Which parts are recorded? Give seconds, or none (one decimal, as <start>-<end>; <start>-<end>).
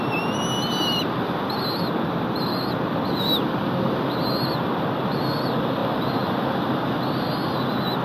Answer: 0.0-5.8; 6.5-8.0